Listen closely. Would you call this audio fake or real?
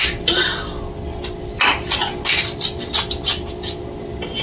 real